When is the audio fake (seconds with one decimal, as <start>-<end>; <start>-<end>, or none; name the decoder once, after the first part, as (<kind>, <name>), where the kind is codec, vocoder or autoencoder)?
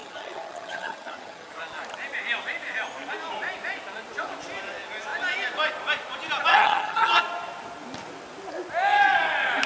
0.0-1.5 (vocoder, HiFi-GAN); 6.5-7.2